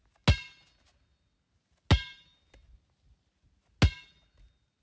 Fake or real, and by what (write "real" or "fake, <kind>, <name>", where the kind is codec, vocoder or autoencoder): real